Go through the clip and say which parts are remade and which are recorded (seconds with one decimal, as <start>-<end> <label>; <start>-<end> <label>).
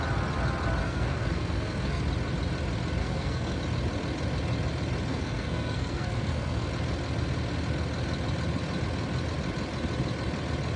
0.0-0.8 recorded; 0.8-2.0 remade; 2.0-3.0 recorded; 3.0-3.6 remade; 3.6-5.1 recorded; 5.1-6.7 remade; 6.7-10.8 recorded